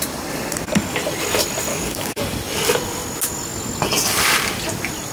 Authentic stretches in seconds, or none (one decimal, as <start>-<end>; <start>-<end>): 0.0-1.7; 2.2-5.1